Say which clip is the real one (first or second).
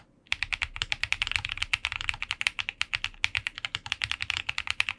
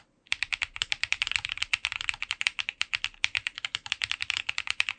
first